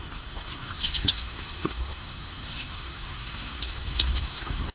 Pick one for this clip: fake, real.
fake